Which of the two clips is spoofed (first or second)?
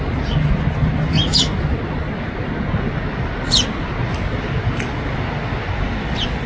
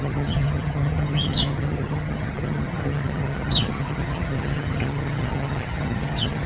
second